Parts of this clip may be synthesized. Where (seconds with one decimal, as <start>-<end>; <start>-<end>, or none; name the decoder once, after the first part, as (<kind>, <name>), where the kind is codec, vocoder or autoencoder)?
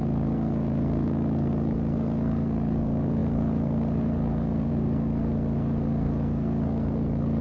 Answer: 0.0-7.4 (codec, SNAC)